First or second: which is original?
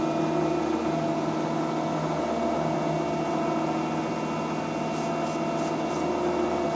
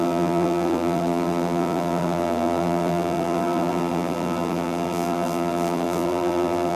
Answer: first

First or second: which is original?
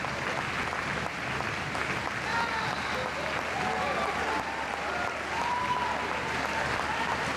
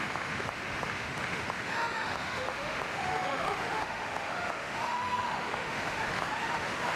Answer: first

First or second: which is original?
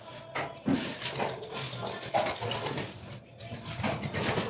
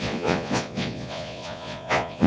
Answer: first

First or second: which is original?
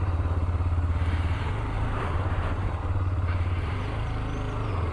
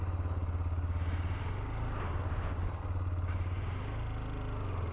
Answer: second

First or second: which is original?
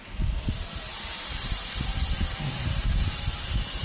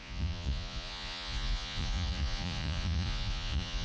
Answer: first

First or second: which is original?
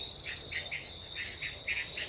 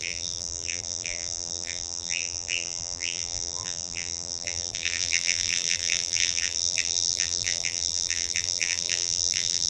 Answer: first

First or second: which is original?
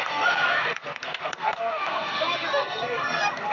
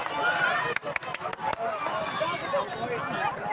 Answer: second